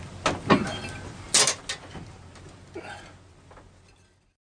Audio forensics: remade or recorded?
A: recorded